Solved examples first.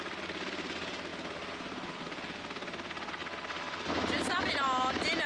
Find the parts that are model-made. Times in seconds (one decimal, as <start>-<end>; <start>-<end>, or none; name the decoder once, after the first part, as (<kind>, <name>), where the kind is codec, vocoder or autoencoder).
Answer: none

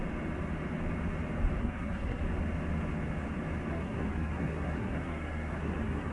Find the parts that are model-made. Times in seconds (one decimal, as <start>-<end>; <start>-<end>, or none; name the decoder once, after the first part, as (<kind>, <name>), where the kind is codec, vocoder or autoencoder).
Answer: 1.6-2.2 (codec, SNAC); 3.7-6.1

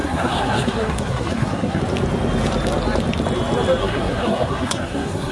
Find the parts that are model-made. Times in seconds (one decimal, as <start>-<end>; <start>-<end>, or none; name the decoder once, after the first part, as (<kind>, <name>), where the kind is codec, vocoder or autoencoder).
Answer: 0.0-1.8 (codec, SNAC); 3.8-5.3

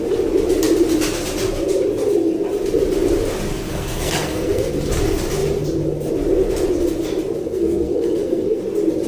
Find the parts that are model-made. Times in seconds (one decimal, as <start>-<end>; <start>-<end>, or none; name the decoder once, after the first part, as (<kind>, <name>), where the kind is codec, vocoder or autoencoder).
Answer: 3.5-4.7 (codec, SNAC); 7.4-8.6

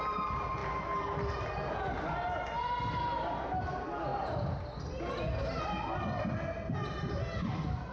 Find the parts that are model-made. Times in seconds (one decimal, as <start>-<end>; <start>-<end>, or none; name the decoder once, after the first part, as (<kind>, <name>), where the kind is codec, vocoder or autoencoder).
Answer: none

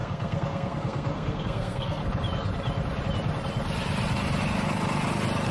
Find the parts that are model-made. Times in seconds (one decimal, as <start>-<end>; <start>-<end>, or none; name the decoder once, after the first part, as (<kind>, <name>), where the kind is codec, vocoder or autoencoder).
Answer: 0.0-2.0 (codec, SNAC)

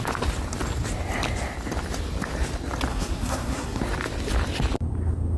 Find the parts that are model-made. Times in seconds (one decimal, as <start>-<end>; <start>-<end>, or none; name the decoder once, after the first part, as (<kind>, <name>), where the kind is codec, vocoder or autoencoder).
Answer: 2.9-3.8 (codec, SNAC)